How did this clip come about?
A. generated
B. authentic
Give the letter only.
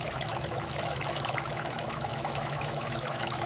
A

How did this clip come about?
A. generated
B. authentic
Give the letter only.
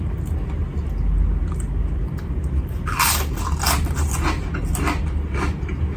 B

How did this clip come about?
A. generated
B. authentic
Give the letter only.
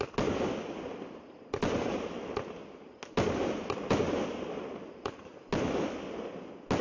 B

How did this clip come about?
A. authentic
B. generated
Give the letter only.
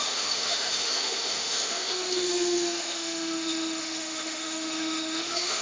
B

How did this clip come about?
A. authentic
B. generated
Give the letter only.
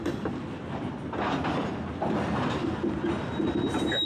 A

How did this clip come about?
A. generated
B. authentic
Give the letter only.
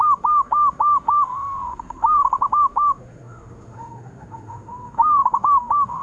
A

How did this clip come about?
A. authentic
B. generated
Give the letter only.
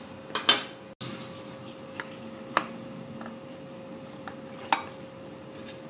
A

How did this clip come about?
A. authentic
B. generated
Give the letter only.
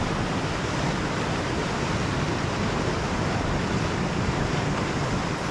A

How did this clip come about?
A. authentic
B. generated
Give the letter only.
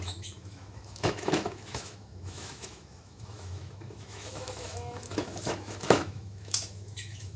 B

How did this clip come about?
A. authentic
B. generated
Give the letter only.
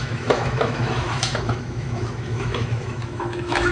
B